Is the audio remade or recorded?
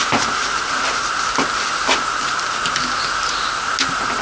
recorded